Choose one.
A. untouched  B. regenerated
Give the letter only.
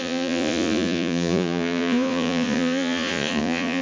B